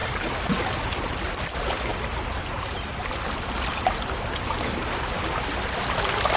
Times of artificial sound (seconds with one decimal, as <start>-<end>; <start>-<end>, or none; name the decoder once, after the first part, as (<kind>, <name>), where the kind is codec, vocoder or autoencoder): none